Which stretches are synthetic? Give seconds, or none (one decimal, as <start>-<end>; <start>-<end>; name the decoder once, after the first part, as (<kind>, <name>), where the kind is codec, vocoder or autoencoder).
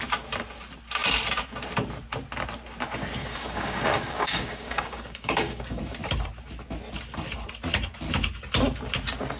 3.2-5.8 (codec, DAC)